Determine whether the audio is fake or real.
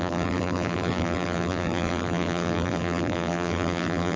fake